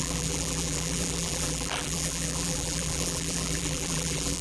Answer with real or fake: fake